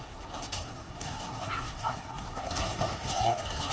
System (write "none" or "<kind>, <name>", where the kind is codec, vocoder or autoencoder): codec, SNAC